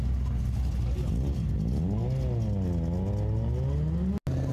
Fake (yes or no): no